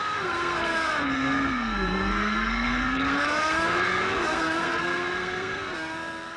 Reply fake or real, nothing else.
fake